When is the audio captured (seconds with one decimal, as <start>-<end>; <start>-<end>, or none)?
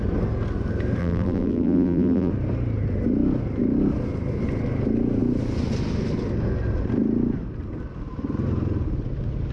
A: 0.0-1.0; 2.3-9.5